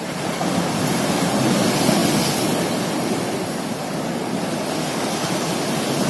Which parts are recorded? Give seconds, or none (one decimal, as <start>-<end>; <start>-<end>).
0.0-6.1